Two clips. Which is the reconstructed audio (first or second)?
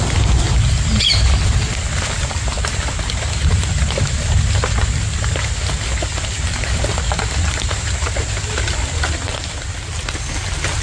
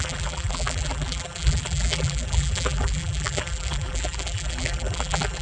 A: second